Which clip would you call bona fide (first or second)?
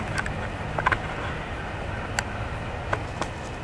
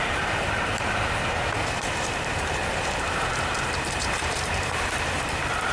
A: first